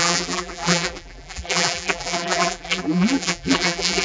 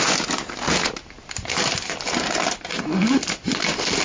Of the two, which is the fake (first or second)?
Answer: first